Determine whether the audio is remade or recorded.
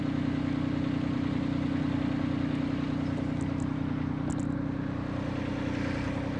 recorded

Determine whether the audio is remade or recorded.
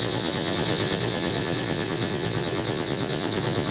remade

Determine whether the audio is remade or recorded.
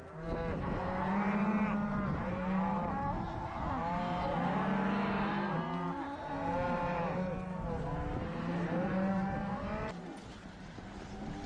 remade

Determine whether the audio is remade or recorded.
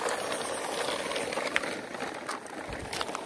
recorded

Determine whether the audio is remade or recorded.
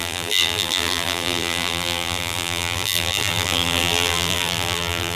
remade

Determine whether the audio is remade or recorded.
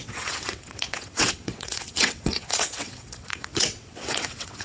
remade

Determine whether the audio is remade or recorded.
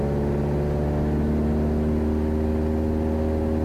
recorded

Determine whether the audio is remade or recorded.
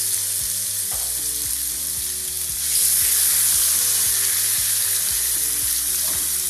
recorded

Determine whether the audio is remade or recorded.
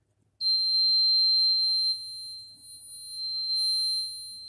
recorded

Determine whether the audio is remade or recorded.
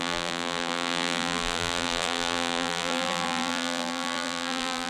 remade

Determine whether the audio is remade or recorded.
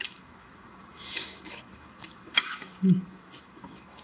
remade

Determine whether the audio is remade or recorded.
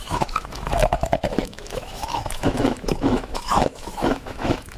remade